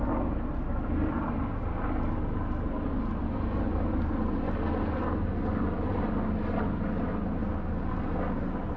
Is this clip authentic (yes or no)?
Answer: yes